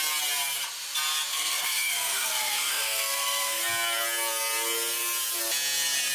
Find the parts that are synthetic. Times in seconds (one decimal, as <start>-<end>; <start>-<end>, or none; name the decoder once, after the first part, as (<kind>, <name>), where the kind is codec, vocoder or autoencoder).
1.3-3.6 (codec, SNAC)